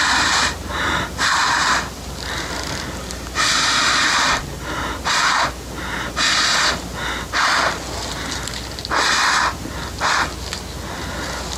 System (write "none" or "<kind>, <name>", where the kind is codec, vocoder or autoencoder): none